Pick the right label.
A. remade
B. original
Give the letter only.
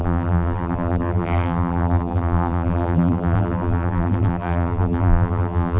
A